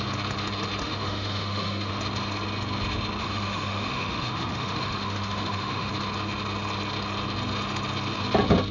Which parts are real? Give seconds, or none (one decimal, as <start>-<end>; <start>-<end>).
0.0-0.8; 1.9-3.2; 5.9-8.7